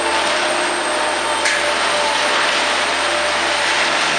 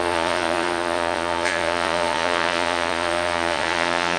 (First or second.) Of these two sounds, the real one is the first